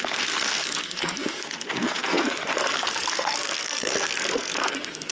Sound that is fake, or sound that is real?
fake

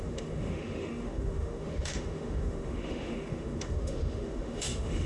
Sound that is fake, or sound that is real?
fake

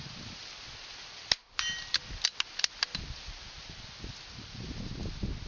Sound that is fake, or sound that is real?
real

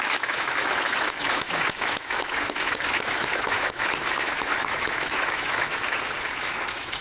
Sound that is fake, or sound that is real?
fake